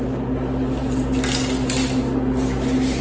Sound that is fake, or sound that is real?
real